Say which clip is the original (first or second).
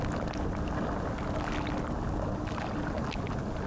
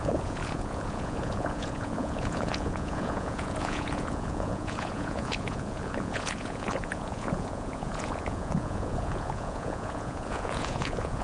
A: first